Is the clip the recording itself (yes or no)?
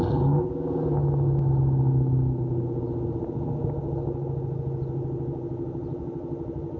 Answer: yes